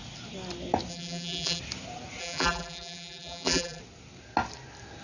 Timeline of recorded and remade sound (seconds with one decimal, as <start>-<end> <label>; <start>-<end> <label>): 0.0-0.9 recorded; 0.9-1.6 remade; 1.6-2.2 recorded; 2.2-3.8 remade; 3.8-5.0 recorded